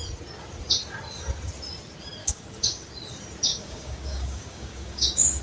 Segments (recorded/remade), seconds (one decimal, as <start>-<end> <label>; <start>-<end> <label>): 0.0-2.2 recorded; 2.2-2.9 remade; 2.9-3.5 recorded; 3.5-5.4 remade